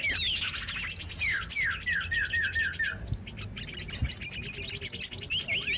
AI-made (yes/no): no